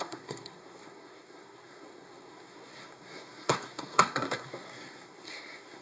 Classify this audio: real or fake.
fake